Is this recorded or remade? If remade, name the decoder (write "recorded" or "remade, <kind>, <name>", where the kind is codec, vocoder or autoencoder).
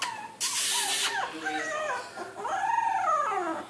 recorded